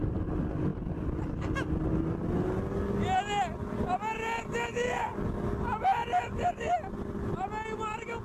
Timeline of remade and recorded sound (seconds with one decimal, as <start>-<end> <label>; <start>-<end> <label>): 0.0-8.2 recorded